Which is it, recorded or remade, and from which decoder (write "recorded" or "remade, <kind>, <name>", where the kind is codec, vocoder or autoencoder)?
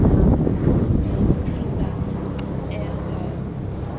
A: recorded